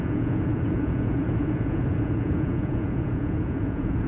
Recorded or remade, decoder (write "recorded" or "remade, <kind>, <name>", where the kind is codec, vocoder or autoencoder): remade, vocoder, Vocos